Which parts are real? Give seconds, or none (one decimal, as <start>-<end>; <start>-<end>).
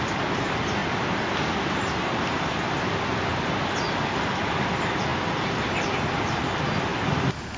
0.0-7.6